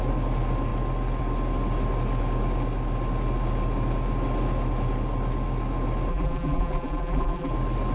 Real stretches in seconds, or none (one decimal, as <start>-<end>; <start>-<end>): 0.0-6.1; 7.5-7.9